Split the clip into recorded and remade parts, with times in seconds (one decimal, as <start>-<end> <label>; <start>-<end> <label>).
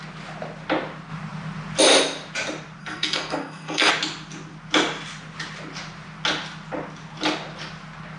0.0-2.8 recorded; 2.8-3.9 remade; 3.9-8.2 recorded